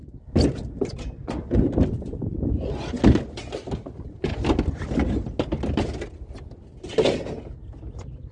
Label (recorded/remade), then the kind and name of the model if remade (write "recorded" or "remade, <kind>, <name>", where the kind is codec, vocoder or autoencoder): recorded